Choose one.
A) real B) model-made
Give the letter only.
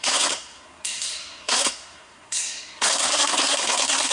B